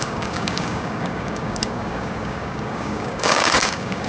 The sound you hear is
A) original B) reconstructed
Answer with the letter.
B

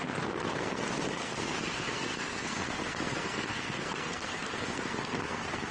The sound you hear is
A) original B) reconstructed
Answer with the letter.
B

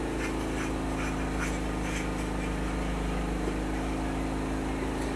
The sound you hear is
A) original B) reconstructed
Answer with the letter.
A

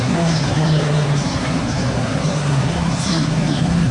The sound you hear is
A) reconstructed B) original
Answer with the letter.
A